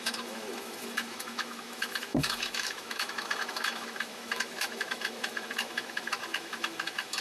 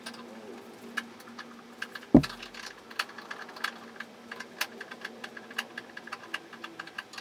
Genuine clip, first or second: second